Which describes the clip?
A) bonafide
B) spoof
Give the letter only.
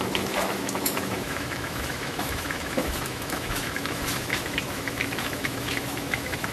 B